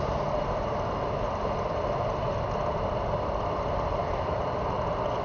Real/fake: real